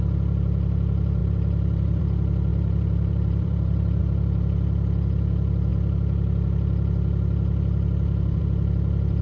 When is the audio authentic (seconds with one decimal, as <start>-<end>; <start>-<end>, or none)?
0.0-1.2; 2.0-2.5; 4.0-9.2